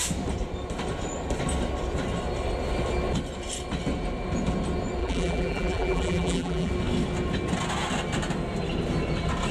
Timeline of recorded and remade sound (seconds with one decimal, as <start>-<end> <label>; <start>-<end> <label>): 0.0-5.0 recorded; 5.0-6.7 remade; 6.7-9.5 recorded